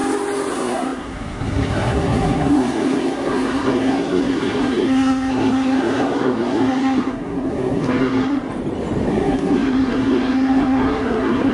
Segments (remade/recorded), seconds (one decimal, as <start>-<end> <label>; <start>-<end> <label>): 0.0-0.5 recorded; 0.5-8.4 remade; 8.4-9.1 recorded; 9.1-11.5 remade